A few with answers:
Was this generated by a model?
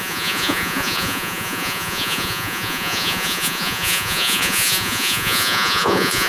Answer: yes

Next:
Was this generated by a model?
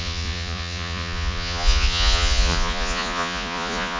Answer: yes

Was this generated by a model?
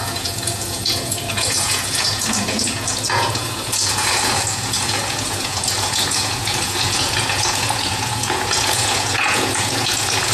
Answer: yes